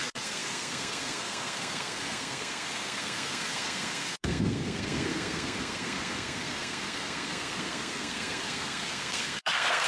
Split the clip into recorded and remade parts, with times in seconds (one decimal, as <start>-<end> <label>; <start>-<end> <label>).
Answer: 0.0-9.9 remade